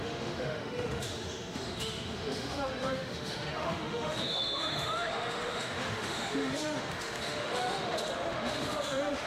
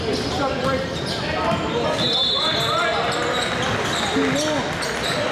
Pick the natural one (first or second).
second